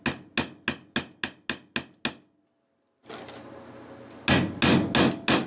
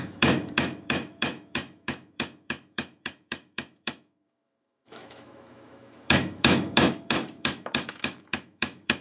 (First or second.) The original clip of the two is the first